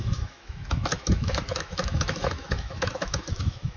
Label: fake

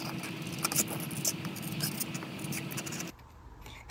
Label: real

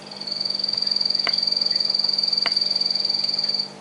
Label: real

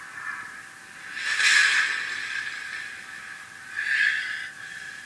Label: real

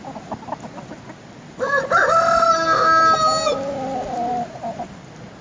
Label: real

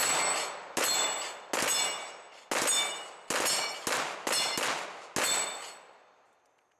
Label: real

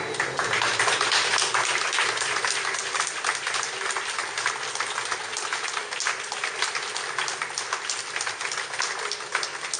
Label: real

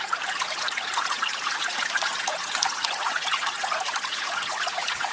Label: fake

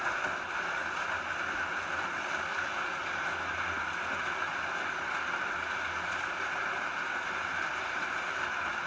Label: real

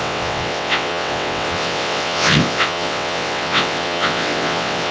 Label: fake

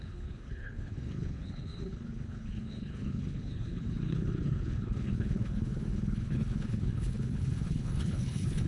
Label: fake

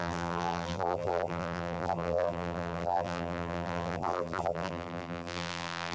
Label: fake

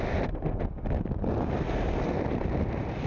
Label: real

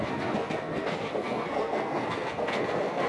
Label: fake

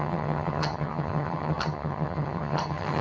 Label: fake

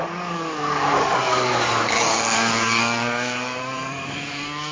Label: fake